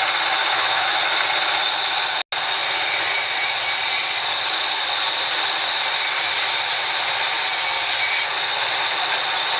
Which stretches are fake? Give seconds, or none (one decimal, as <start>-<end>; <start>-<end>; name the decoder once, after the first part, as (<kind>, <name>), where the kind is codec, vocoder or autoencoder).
0.4-1.0 (autoencoder, DAC-VAE)